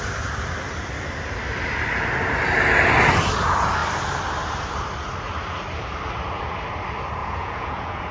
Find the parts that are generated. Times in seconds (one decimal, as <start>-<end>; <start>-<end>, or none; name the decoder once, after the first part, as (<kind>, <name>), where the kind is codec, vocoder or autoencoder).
7.2-8.1 (vocoder, Vocos)